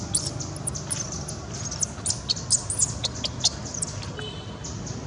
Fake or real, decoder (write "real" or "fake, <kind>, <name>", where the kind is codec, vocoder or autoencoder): real